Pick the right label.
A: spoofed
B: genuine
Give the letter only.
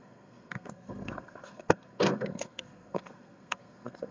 A